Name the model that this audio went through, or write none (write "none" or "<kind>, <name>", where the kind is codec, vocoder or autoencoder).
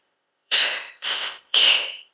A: codec, ZipCodec